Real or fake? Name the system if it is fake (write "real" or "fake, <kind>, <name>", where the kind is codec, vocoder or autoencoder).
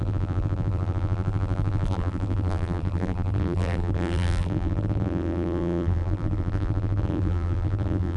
fake, vocoder, BigVGAN v2